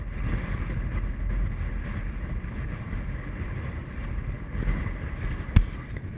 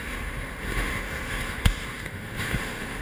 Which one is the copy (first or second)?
second